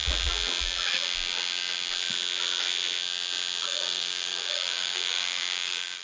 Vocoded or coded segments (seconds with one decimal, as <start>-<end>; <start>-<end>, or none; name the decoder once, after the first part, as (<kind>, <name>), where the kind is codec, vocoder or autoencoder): 3.6-6.0 (codec, DAC)